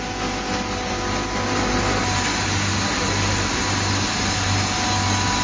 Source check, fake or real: real